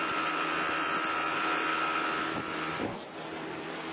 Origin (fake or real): real